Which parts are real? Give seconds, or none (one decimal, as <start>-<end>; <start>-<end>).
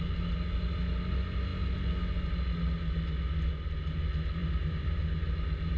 0.0-4.4; 5.0-5.8